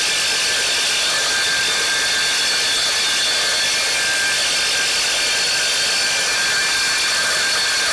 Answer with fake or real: real